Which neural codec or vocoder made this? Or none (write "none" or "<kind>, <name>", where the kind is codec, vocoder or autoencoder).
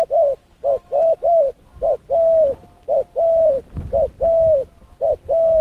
none